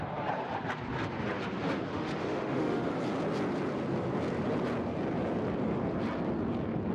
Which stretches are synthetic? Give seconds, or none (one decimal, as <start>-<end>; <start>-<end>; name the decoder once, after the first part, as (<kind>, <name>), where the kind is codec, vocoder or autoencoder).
1.9-2.9 (autoencoder, DAC-VAE)